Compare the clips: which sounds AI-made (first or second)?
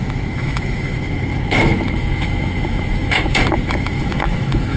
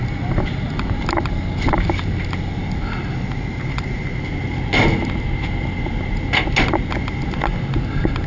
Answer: first